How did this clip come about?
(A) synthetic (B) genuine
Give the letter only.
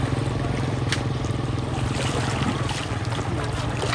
B